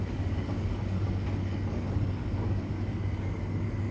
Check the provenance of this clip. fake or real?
fake